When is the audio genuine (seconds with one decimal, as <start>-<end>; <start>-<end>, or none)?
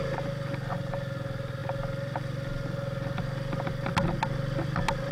0.0-5.1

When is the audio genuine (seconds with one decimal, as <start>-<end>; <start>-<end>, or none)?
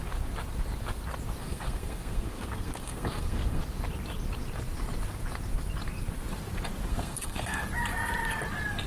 0.0-1.4; 3.6-6.9; 7.6-8.9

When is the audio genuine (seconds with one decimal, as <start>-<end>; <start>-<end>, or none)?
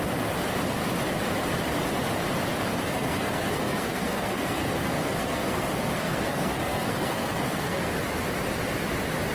0.0-2.8; 7.9-9.3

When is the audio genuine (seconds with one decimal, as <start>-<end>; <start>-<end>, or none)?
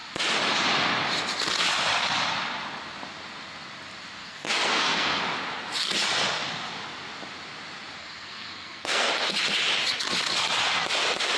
0.0-4.2; 5.2-8.0; 9.1-11.4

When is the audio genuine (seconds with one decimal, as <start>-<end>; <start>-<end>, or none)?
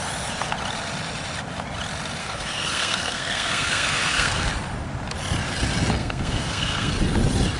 0.0-2.2; 4.5-6.0; 6.9-7.6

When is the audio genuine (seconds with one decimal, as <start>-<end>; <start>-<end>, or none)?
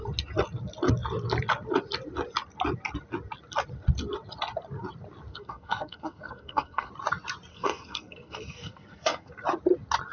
0.0-5.3; 6.9-7.5; 9.3-10.1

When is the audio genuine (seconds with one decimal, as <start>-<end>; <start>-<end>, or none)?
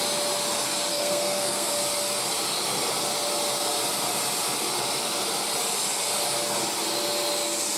0.0-0.9; 1.7-7.8